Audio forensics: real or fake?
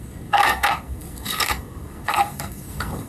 fake